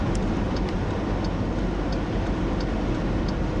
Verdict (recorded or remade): recorded